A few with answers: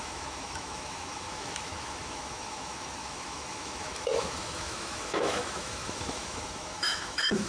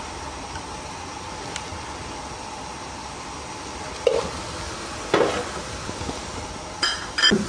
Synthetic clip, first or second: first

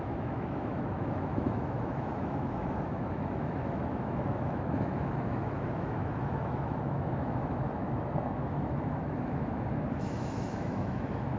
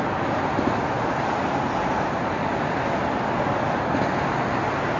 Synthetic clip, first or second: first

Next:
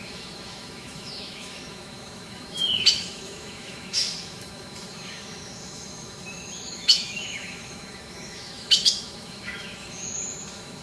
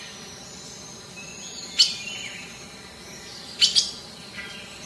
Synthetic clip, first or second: first